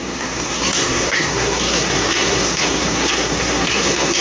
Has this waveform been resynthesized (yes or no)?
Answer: yes